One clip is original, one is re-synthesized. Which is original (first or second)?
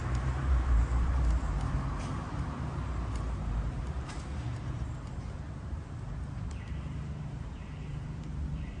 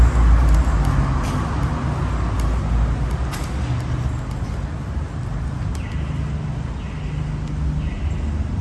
second